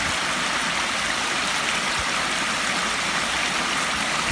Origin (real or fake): real